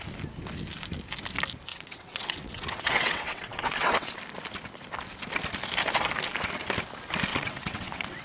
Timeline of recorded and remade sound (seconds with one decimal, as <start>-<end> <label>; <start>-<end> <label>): 0.0-1.7 recorded; 1.7-4.2 remade; 4.2-7.3 recorded; 7.3-8.2 remade